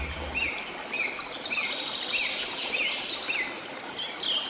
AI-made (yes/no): no